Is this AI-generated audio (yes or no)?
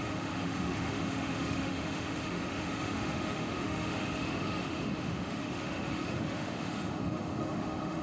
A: yes